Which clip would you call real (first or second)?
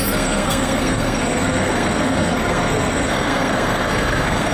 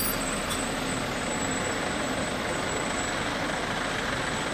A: second